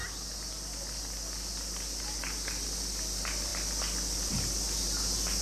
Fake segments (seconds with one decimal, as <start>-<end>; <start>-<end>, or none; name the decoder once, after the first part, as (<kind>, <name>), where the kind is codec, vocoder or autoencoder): none